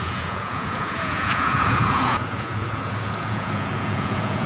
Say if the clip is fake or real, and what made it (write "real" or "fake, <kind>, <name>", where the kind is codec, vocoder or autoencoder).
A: fake, vocoder, Vocos